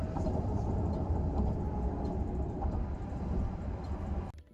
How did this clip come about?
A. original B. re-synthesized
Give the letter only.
A